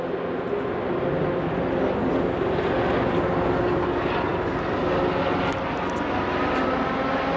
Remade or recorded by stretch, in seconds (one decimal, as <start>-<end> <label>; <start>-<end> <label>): 0.0-7.4 recorded